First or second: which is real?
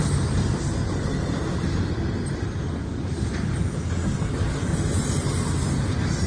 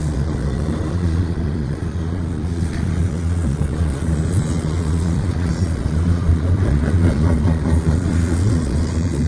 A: first